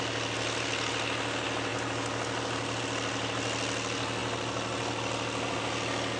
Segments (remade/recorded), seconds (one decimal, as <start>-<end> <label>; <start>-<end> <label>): 0.0-6.2 recorded